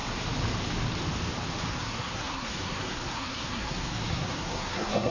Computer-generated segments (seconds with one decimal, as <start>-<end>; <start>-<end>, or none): 1.7-5.1

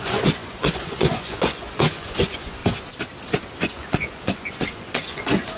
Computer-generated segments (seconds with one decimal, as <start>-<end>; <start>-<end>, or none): 0.0-2.6; 3.5-5.6

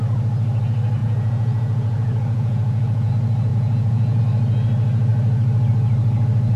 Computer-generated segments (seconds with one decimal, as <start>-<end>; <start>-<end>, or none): 1.0-3.1; 3.5-4.2

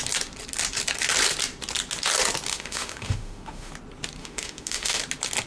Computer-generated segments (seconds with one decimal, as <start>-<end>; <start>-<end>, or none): 2.5-3.7; 4.2-5.0